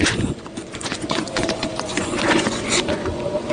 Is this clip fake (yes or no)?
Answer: yes